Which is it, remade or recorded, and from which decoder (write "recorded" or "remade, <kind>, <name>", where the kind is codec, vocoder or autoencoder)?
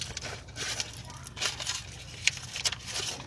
recorded